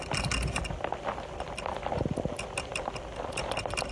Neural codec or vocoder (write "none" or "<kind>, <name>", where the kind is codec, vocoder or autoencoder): none